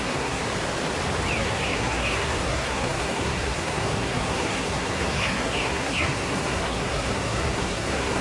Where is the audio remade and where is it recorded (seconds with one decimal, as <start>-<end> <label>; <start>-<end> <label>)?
0.0-0.4 remade; 0.4-1.4 recorded; 1.4-8.2 remade